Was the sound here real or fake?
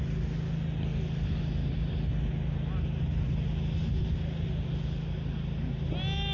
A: real